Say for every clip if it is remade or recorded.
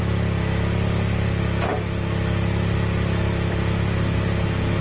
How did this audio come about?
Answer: recorded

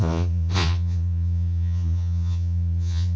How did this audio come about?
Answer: remade